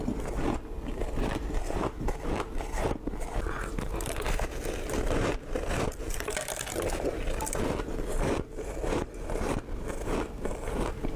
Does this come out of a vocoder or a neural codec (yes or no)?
no